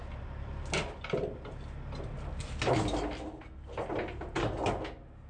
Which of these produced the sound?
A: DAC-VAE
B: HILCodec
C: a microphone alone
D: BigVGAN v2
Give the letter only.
C